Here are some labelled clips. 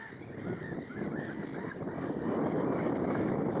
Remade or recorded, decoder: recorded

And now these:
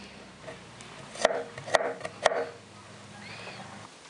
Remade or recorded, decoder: recorded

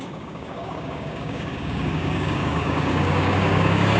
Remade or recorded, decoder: remade, codec, DAC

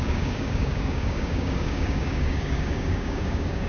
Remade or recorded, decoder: remade, codec, DAC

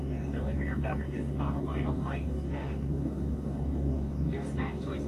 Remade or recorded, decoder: remade, codec, DAC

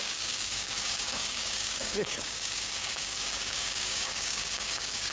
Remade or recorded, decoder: remade, codec, DAC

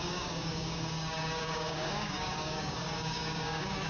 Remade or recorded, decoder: remade, codec, DAC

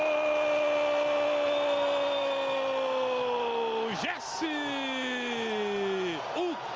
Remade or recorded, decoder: recorded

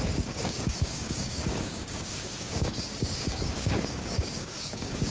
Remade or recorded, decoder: remade, codec, DAC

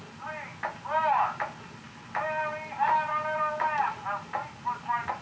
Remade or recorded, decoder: recorded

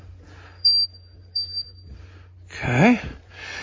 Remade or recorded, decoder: recorded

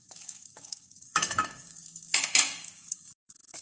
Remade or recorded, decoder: remade, codec, DAC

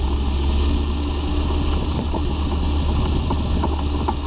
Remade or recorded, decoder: recorded